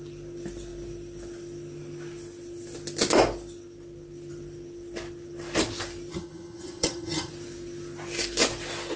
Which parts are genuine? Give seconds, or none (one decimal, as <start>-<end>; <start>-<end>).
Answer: 0.0-6.1; 7.3-9.0